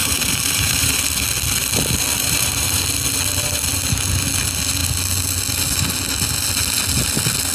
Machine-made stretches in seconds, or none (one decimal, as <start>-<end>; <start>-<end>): 0.0-1.0; 2.2-2.8

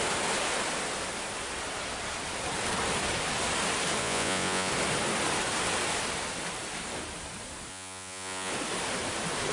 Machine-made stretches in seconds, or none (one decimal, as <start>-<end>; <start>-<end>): 4.0-4.7; 7.7-8.5

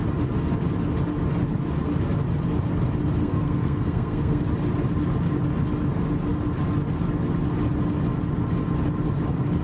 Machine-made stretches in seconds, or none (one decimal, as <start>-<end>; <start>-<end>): 3.2-4.4

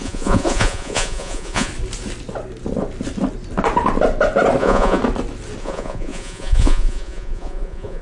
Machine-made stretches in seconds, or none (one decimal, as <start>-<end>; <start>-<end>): 0.0-1.7; 4.6-5.0; 5.6-8.0

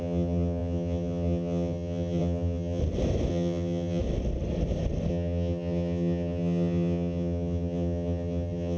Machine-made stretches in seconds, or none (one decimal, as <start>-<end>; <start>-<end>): 0.0-2.8; 3.3-4.0; 5.1-8.8

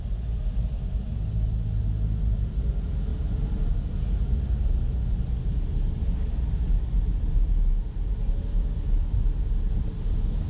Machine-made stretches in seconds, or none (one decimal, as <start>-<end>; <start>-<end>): none

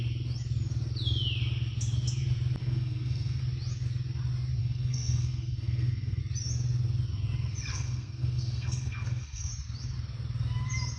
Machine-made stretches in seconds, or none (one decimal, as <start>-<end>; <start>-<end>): 2.6-3.4; 4.6-6.2; 7.7-9.5